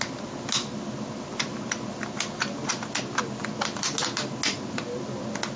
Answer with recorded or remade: recorded